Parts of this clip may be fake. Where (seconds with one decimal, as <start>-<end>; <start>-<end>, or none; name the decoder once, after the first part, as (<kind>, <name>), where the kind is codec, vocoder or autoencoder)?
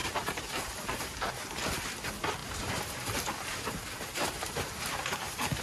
0.0-1.3 (vocoder, BigVGAN v2); 2.4-5.6